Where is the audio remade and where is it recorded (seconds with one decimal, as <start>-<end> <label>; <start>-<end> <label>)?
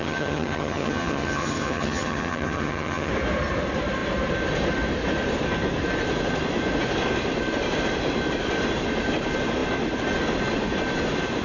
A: 0.0-3.1 remade; 3.1-11.4 recorded